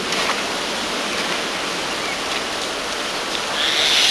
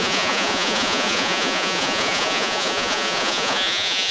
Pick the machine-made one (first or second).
second